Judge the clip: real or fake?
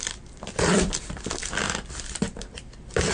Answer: fake